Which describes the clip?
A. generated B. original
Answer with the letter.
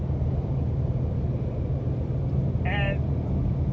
B